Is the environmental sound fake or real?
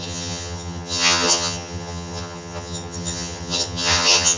fake